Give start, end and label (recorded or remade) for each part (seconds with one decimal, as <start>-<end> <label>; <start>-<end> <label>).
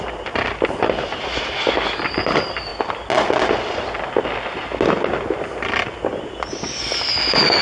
0.0-7.6 recorded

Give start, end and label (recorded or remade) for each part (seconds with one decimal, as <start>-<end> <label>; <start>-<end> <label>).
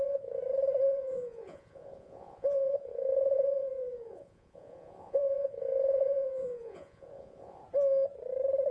0.0-0.4 remade; 0.4-0.9 recorded; 0.9-7.6 remade; 7.6-8.7 recorded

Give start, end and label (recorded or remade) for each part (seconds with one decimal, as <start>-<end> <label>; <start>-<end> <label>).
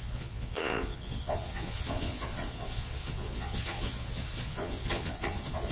0.0-5.7 remade